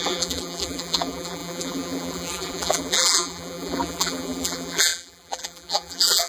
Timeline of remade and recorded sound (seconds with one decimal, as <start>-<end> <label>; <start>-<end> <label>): 0.0-6.3 remade